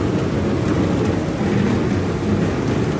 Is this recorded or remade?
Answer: recorded